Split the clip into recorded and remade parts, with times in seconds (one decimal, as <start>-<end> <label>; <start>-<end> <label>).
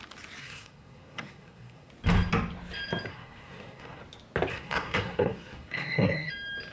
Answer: 0.0-0.4 recorded; 0.4-1.9 remade; 1.9-3.1 recorded; 3.1-4.0 remade; 4.0-4.5 recorded; 4.5-6.3 remade; 6.3-6.7 recorded